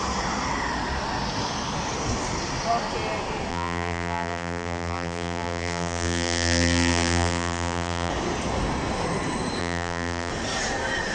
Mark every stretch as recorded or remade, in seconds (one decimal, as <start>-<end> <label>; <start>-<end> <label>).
0.0-3.5 recorded; 3.5-8.1 remade; 8.1-9.6 recorded; 9.6-10.3 remade; 10.3-11.1 recorded